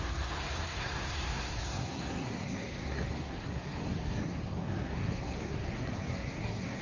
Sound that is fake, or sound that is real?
fake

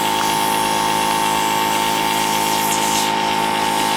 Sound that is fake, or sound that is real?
real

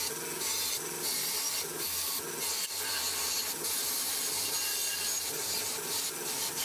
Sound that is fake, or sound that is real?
real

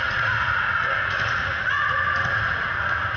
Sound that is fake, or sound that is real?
fake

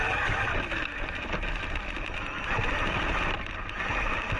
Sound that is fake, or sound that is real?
real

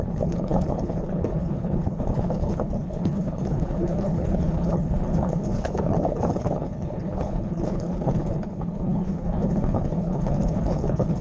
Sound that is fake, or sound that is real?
fake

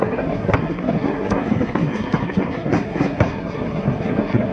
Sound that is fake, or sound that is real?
fake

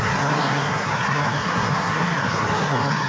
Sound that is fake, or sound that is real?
fake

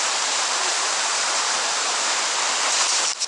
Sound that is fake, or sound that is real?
fake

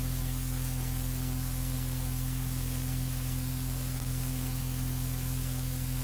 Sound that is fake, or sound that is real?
fake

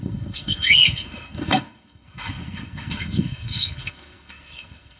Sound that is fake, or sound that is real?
fake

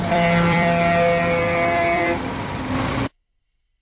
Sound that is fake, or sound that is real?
fake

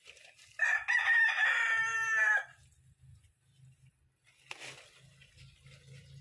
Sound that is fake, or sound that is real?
real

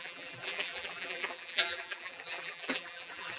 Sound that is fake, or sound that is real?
fake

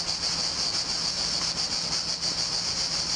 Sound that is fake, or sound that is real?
real